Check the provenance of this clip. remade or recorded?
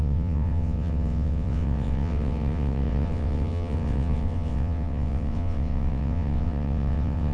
remade